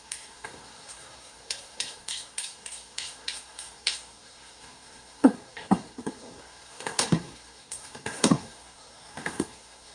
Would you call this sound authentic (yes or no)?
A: no